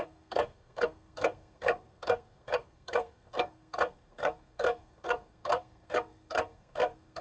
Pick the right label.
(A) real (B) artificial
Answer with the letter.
B